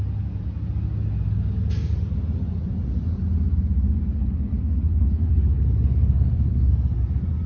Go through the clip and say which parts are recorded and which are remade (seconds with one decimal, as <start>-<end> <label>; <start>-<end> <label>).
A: 0.0-4.1 recorded; 4.1-6.7 remade; 6.7-7.5 recorded